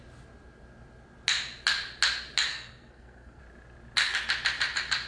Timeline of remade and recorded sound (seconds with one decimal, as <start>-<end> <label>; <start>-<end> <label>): 0.0-2.5 recorded; 2.5-3.4 remade; 3.4-5.1 recorded